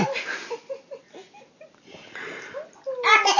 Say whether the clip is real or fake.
real